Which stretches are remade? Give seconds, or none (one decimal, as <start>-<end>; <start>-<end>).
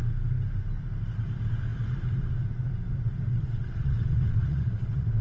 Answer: 3.3-5.2